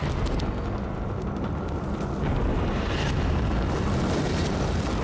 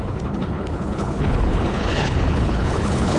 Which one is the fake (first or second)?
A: second